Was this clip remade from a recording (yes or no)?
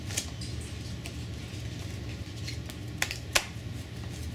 no